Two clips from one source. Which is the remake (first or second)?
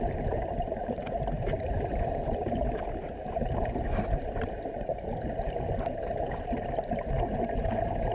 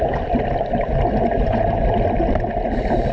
first